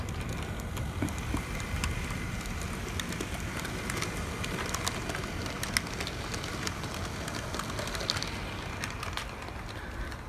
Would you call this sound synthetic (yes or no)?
no